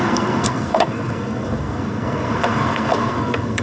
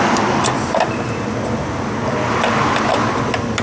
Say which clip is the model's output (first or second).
first